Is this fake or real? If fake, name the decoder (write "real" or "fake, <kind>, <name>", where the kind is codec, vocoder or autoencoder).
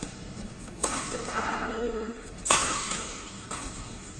fake, codec, SNAC